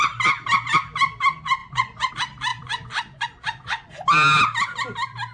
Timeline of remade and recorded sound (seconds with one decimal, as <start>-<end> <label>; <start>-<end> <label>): 0.0-1.6 recorded; 1.6-2.1 remade; 2.1-2.5 recorded; 2.5-3.9 remade; 3.9-5.3 recorded